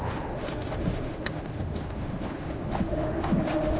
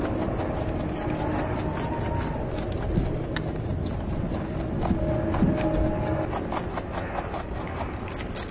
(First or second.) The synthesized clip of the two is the first